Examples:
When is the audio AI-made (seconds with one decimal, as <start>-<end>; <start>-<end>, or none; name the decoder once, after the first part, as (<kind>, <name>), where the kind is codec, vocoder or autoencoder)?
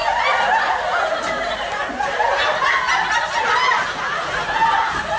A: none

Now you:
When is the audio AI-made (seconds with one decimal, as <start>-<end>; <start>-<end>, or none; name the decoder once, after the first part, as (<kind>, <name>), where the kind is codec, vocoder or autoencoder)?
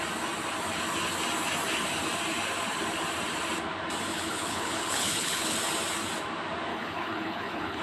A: 4.1-5.6 (codec, HILCodec); 6.7-7.8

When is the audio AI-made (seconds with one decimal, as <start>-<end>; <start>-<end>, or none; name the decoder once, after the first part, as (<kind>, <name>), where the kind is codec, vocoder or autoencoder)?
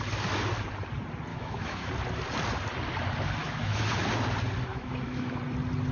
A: 1.3-1.9 (autoencoder, DAC-VAE); 3.4-4.0; 4.7-5.4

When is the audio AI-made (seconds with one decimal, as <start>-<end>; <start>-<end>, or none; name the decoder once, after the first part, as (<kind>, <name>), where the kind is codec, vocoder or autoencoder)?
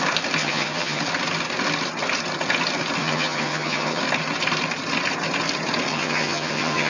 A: 0.4-1.0 (vocoder, HiFi-GAN); 3.0-4.0; 5.9-6.9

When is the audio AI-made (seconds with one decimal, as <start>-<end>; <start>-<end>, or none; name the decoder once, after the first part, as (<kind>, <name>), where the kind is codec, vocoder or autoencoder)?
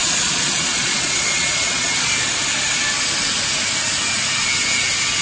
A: 0.0-2.1 (vocoder, Vocos)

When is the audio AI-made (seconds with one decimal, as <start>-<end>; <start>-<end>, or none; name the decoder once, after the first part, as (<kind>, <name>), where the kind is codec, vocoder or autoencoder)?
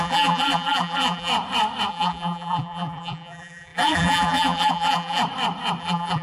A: 0.0-1.3 (vocoder, BigVGAN v2); 1.9-5.2; 5.8-6.2